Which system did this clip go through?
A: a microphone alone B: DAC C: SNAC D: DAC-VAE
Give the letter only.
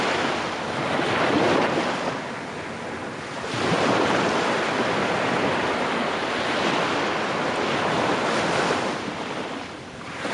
A